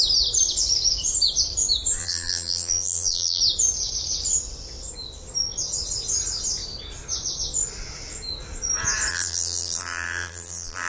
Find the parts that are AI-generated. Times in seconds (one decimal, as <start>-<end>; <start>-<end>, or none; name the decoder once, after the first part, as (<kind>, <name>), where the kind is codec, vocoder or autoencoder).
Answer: 2.0-3.4 (vocoder, BigVGAN v2); 9.1-10.9